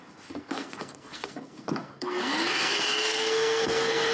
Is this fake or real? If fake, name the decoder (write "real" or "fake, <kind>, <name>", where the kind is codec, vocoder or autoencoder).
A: fake, codec, SNAC